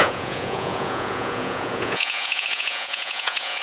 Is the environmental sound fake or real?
fake